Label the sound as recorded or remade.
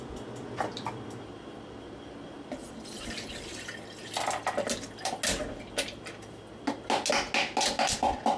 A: recorded